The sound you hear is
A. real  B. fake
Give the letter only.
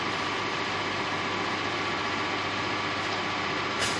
A